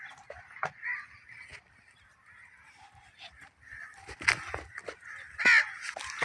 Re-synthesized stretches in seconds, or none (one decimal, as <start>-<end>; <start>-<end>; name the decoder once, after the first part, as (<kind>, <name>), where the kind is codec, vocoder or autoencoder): none

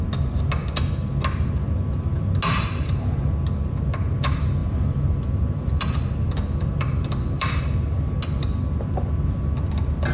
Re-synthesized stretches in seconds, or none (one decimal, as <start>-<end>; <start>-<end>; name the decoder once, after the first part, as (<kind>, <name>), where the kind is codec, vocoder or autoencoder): 4.6-7.6 (vocoder, BigVGAN v2)

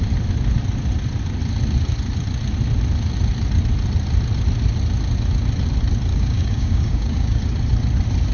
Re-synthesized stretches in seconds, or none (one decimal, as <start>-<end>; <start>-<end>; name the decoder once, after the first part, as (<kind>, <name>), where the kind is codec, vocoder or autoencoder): 6.1-7.4 (codec, DAC)

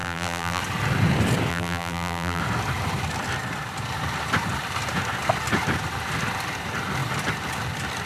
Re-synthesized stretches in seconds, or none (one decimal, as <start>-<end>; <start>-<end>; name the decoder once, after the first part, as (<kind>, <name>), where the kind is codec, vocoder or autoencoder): 0.0-0.6 (vocoder, BigVGAN v2); 1.5-2.4